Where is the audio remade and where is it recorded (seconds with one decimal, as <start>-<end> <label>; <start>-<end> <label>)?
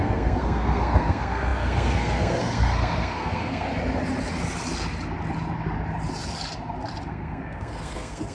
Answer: 0.0-3.7 remade; 3.7-7.1 recorded; 7.1-8.3 remade